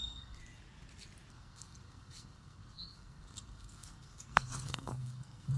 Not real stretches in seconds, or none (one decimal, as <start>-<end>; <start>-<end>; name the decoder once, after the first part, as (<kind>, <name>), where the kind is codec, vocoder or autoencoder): 0.0-0.4 (codec, SNAC); 1.3-5.6